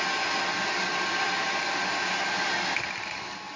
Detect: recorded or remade recorded